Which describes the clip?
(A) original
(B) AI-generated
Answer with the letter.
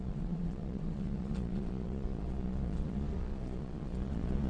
B